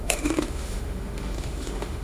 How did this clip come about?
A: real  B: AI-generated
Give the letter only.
B